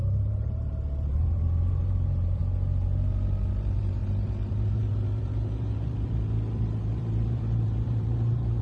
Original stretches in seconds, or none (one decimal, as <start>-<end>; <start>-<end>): 2.4-3.5